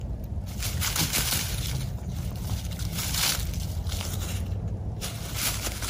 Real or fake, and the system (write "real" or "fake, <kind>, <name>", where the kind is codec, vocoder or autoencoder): real